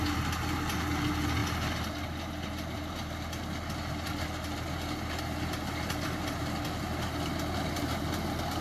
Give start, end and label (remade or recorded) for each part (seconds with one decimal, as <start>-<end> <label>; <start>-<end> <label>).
0.0-8.6 recorded